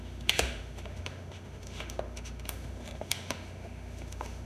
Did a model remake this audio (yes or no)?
yes